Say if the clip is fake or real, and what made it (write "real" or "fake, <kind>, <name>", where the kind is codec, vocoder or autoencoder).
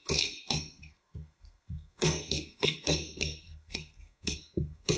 fake, codec, SNAC